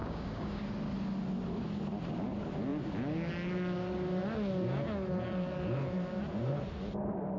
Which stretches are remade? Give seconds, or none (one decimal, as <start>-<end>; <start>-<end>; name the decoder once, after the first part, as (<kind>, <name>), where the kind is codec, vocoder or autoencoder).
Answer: 0.0-0.6 (codec, DAC)